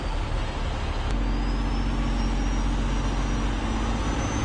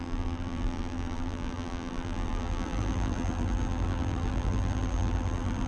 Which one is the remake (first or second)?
second